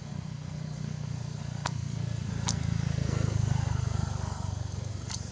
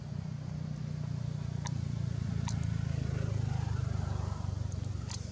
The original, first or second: second